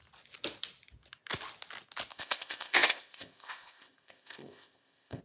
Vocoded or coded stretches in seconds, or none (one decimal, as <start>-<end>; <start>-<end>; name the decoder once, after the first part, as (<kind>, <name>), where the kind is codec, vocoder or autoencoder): 2.1-5.2 (codec, ZipCodec)